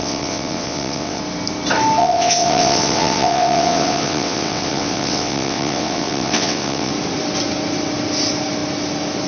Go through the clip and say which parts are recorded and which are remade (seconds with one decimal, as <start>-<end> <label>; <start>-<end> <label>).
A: 0.0-1.2 remade; 1.2-2.0 recorded; 2.0-6.9 remade; 6.9-9.3 recorded